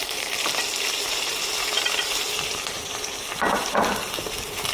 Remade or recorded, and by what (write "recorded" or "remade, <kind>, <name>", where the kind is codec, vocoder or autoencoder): remade, vocoder, BigVGAN v2